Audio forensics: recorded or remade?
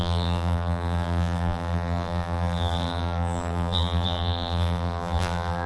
remade